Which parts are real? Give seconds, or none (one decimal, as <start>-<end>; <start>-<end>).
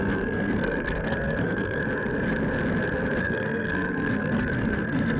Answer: 1.8-3.2